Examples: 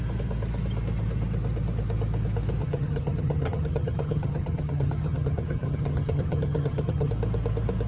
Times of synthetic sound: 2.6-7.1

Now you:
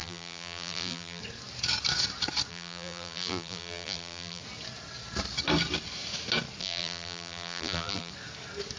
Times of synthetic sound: 0.0-1.2; 2.5-4.4; 6.6-8.1

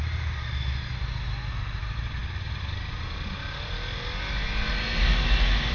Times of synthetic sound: none

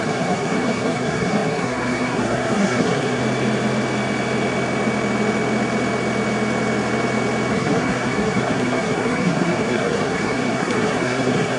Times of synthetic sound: 0.0-3.2; 7.5-11.6

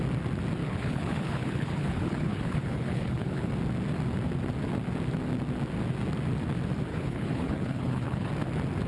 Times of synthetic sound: 0.6-3.5; 6.9-8.3

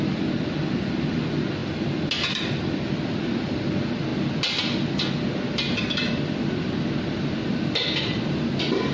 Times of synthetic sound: none

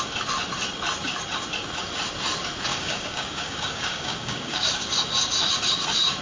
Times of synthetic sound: 2.7-5.0

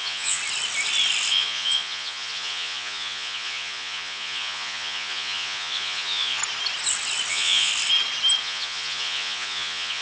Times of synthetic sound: 0.0-0.4; 1.3-6.4; 7.3-7.7; 8.4-10.0